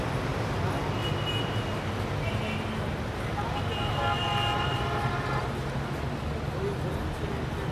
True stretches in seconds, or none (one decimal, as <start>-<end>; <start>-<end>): 0.0-7.7

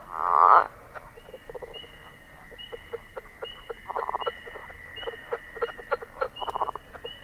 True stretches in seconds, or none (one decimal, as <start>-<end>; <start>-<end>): 0.0-4.6; 5.1-7.2